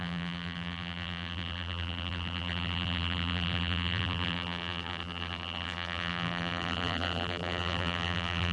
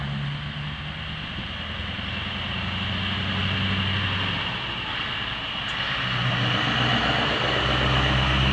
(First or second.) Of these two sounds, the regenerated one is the first